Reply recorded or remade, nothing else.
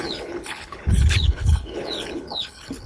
remade